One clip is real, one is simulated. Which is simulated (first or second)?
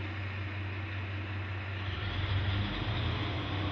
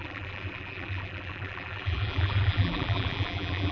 second